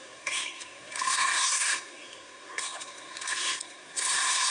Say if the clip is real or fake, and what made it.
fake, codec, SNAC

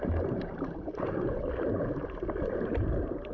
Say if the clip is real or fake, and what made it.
fake, vocoder, BigVGAN v2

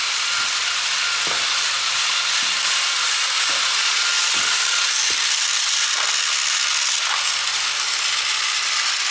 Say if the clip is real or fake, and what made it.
real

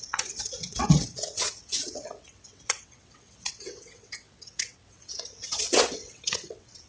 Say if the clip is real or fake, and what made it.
fake, vocoder, WaveNeXt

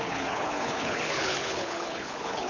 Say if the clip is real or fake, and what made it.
fake, codec, HILCodec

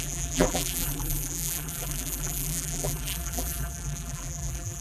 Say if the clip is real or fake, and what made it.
fake, vocoder, BigVGAN v2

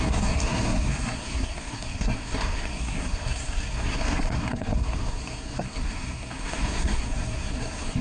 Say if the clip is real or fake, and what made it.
fake, codec, SNAC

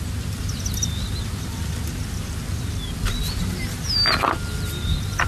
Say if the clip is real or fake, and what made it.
real